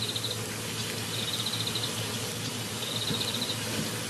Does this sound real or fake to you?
real